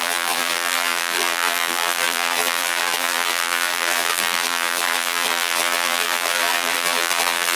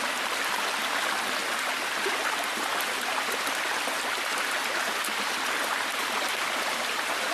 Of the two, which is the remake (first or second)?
first